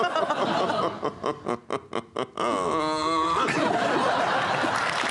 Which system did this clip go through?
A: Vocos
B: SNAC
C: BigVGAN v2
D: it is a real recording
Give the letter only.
D